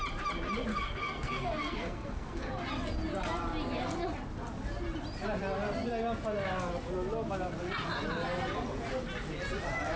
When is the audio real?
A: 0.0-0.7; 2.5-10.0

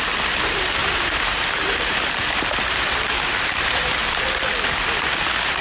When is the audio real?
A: 0.0-0.8; 4.2-5.6

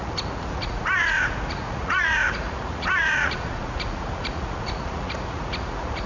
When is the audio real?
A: none

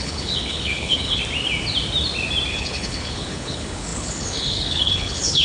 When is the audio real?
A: 1.2-2.5

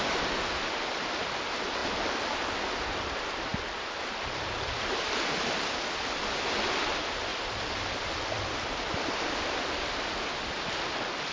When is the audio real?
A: 0.0-11.3

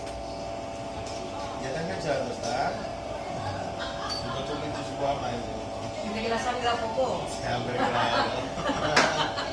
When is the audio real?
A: 0.0-2.9; 3.8-4.7; 5.4-9.5

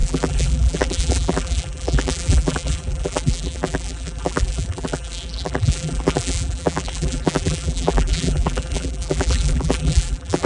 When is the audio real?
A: none